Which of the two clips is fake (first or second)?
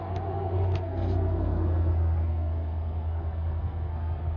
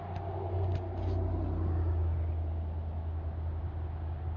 first